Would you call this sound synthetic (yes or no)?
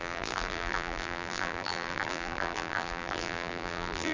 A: yes